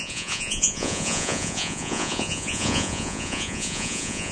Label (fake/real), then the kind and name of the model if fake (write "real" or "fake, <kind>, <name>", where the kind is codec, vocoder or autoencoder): fake, vocoder, Vocos